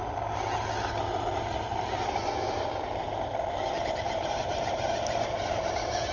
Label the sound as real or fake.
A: real